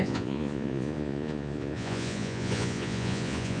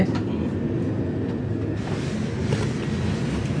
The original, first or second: second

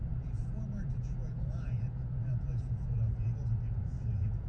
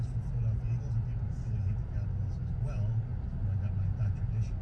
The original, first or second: second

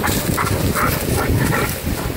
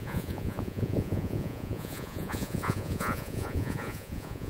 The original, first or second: first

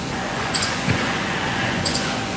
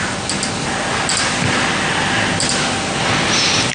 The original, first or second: second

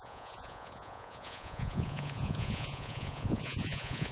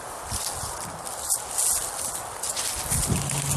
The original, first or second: second